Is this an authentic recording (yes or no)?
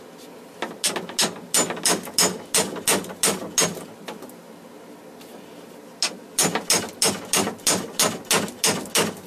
yes